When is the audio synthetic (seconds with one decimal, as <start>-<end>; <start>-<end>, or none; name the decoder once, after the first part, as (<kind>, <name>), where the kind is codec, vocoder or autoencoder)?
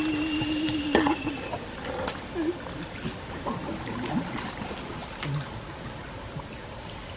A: none